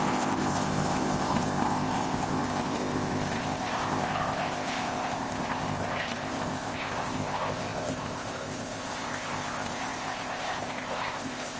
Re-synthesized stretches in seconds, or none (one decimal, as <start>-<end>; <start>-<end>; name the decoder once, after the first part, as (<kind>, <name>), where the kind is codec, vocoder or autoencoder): 0.0-11.6 (codec, ZipCodec)